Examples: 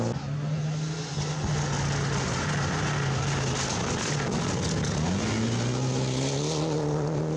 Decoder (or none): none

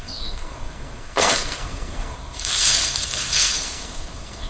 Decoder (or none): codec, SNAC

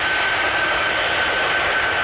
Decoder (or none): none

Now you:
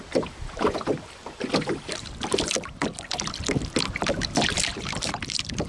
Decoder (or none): vocoder, BigVGAN v2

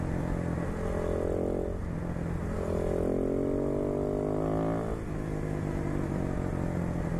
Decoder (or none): none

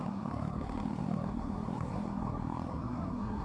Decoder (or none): codec, SNAC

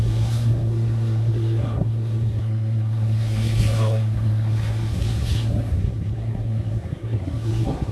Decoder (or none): codec, SNAC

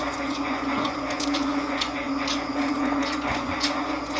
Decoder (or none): vocoder, Vocos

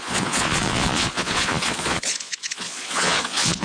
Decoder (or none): vocoder, Vocos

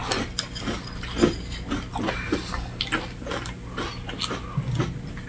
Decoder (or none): none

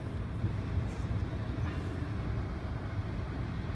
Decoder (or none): none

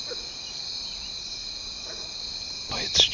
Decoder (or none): none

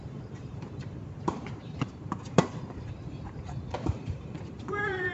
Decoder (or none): vocoder, BigVGAN v2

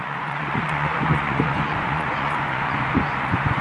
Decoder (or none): vocoder, Vocos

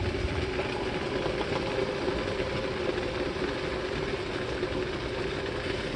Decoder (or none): none